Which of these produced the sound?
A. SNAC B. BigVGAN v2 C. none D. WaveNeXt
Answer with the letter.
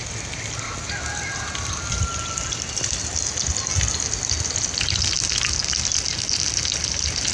C